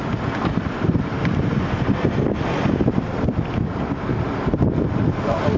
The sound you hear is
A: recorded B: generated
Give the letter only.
A